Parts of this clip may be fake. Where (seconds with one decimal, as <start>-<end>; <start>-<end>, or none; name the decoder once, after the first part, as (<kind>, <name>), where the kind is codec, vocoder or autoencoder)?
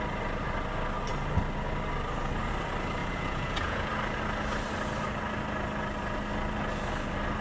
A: 3.0-3.9 (vocoder, Vocos)